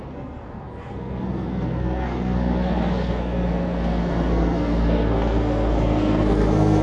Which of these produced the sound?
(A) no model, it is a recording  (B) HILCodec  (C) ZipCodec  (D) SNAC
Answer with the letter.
D